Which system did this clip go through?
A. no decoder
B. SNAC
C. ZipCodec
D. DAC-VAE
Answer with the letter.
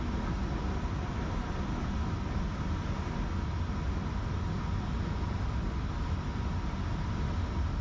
A